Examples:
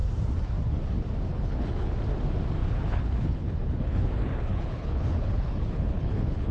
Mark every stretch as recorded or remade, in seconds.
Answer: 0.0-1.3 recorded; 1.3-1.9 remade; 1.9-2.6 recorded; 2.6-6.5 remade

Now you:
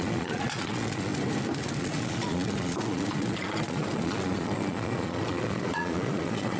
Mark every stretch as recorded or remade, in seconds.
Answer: 0.0-1.1 remade; 1.1-1.8 recorded; 1.8-6.6 remade

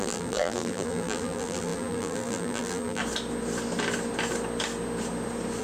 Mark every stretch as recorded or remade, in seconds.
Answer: 0.0-3.0 remade; 3.0-5.6 recorded

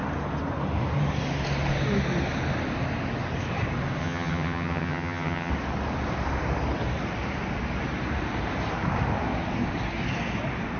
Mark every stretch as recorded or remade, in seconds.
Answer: 0.0-4.0 recorded; 4.0-5.5 remade; 5.5-10.8 recorded

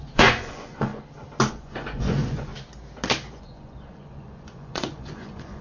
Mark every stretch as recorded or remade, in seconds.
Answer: 0.0-0.9 remade; 0.9-1.5 recorded; 1.5-2.5 remade; 2.5-3.4 recorded; 3.4-5.6 remade

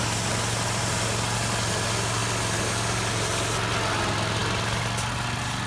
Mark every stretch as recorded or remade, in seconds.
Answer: 0.0-5.7 recorded

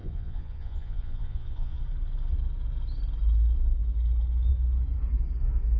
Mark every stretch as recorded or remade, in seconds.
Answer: 0.0-1.8 remade; 1.8-5.8 recorded